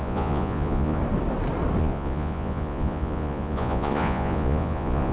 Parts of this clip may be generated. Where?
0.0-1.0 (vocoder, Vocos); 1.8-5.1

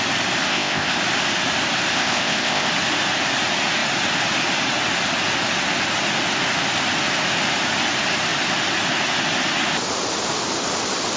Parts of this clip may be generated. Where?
0.5-1.0 (codec, ZipCodec); 1.9-2.7

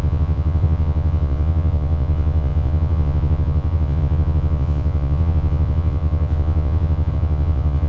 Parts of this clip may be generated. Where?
0.0-7.9 (vocoder, Vocos)